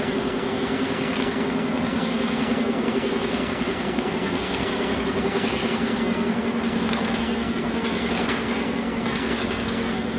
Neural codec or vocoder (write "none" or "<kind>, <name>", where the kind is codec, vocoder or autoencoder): codec, SNAC